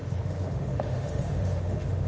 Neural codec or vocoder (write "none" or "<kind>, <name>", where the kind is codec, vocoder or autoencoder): autoencoder, DAC-VAE